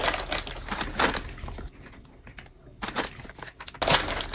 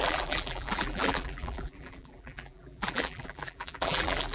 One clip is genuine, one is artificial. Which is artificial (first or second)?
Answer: second